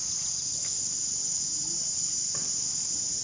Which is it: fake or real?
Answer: real